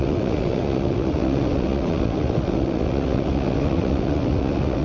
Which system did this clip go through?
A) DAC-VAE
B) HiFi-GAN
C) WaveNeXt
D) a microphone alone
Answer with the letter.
C